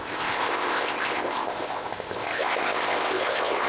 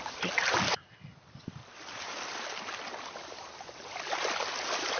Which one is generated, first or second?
first